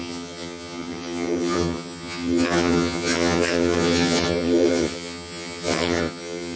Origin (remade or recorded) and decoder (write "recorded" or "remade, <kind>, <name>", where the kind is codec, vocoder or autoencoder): remade, vocoder, HiFi-GAN